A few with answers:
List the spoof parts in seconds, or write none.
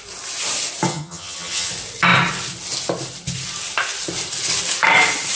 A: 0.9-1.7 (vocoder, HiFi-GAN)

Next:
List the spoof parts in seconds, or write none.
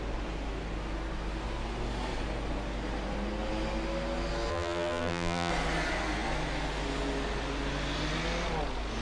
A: 4.5-5.5 (vocoder, BigVGAN v2)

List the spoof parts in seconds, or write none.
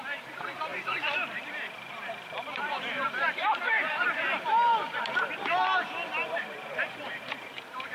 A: 0.0-7.9 (vocoder, BigVGAN v2)